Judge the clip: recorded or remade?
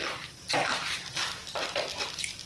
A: recorded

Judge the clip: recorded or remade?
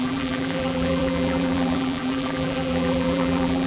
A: remade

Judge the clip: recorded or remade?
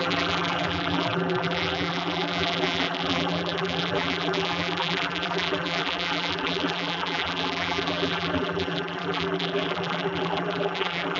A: remade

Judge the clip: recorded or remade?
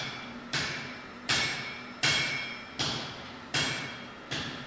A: remade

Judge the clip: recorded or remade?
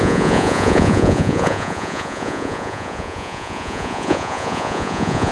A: remade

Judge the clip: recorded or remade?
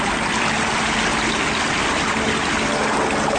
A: recorded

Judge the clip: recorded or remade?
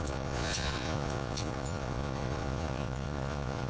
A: remade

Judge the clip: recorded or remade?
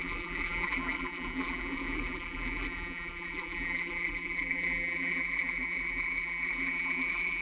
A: remade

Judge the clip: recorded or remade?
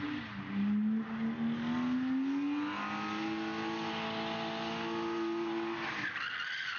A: recorded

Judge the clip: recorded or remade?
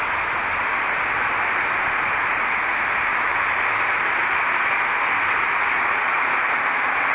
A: recorded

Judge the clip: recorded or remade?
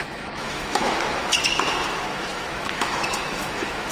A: remade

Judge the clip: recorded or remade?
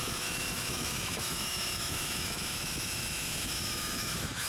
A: remade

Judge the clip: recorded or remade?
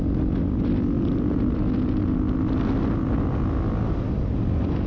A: recorded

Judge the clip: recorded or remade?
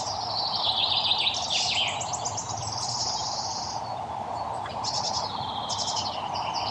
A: recorded